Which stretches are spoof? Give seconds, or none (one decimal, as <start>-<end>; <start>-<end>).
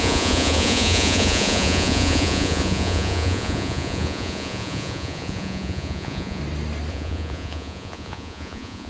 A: 0.0-6.4; 6.9-8.9